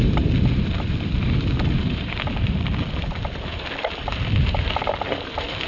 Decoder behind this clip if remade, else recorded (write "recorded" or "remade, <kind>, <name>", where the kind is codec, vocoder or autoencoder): remade, vocoder, BigVGAN v2